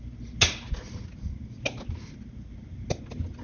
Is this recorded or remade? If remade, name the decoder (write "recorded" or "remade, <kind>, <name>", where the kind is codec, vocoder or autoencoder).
recorded